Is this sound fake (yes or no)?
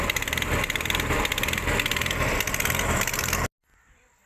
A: no